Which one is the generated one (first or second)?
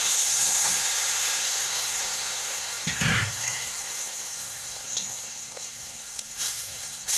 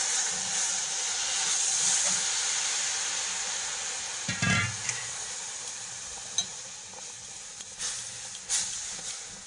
first